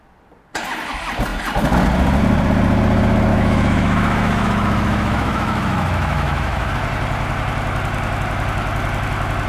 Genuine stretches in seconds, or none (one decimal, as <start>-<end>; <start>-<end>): 0.0-3.3; 6.7-9.5